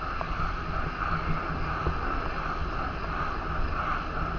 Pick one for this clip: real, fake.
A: real